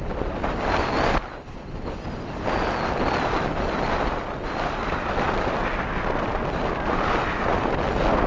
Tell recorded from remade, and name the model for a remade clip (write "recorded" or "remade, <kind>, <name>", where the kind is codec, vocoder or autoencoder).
recorded